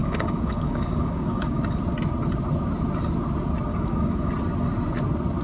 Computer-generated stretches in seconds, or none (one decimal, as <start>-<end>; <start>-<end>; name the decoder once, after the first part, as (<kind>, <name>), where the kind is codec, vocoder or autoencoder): 0.0-1.6 (codec, DAC); 3.7-4.3